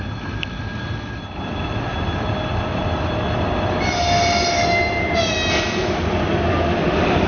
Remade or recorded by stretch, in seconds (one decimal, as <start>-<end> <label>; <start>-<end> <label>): 0.0-7.3 recorded